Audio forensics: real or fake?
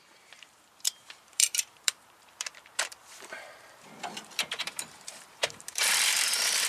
fake